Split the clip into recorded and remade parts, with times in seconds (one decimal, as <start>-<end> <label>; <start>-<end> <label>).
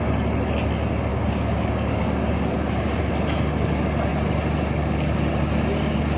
0.0-1.1 recorded; 1.1-3.0 remade; 3.0-6.2 recorded